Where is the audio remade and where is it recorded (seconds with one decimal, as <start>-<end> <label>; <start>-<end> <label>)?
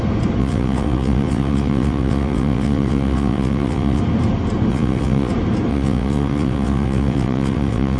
0.0-0.4 recorded; 0.4-4.0 remade; 4.0-4.7 recorded; 4.7-5.3 remade; 5.3-5.7 recorded; 5.7-8.0 remade